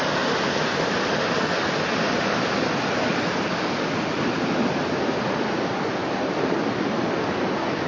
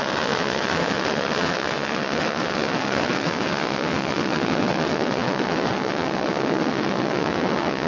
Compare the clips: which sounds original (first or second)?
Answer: first